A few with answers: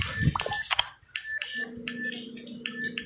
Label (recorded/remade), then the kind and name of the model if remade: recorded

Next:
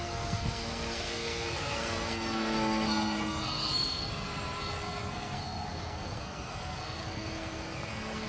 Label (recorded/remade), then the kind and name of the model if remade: remade, codec, SNAC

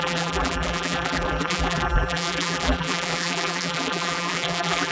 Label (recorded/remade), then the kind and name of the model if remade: remade, vocoder, BigVGAN v2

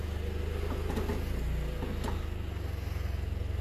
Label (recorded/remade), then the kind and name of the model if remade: recorded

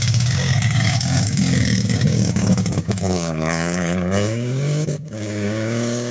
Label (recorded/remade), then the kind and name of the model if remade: remade, codec, DAC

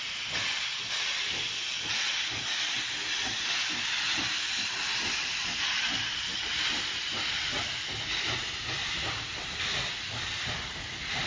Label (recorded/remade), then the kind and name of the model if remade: recorded